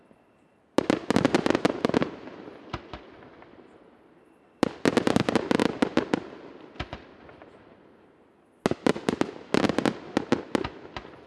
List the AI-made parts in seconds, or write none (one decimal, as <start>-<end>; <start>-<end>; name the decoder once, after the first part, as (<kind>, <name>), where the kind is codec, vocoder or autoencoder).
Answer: none